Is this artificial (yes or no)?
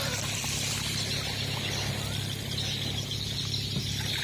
no